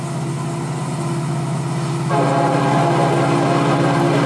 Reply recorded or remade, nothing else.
recorded